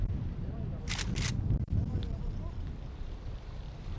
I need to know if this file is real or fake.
real